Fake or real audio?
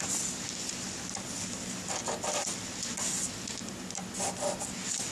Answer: real